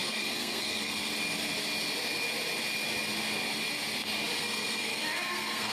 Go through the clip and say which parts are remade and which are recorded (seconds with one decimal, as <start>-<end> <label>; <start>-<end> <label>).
0.0-1.0 remade; 1.0-4.4 recorded; 4.4-5.7 remade